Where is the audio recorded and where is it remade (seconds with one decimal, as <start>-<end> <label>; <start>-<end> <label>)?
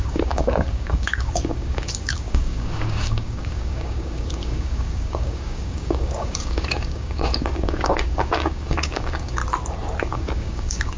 0.0-9.4 remade; 9.4-10.0 recorded; 10.0-11.0 remade